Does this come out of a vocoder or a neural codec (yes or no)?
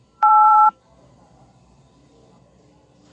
yes